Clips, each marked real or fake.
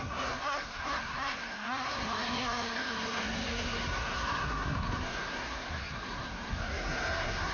fake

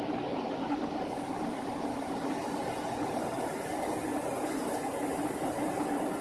real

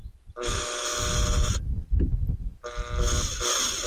real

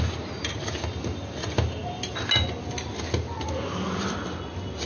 real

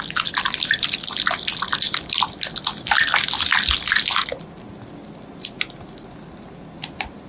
real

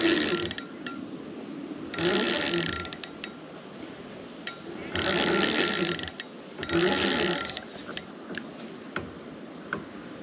real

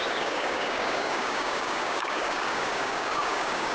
fake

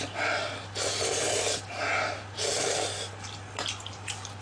real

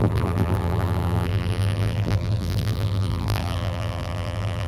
fake